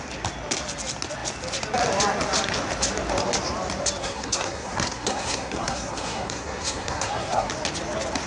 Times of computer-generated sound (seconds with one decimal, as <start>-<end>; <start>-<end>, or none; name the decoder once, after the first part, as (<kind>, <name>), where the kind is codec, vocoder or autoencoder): 4.0-7.5 (codec, SNAC)